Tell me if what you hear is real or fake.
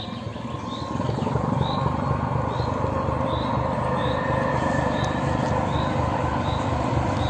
real